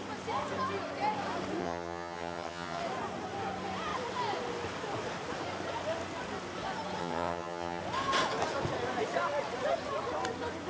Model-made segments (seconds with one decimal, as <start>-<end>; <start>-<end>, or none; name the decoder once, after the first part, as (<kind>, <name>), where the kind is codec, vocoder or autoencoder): 1.6-2.8 (vocoder, HiFi-GAN); 7.0-7.8